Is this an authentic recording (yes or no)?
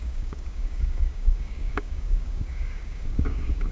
no